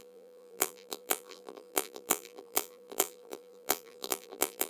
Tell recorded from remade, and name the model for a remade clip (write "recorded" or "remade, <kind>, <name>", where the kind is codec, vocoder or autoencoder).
remade, vocoder, BigVGAN v2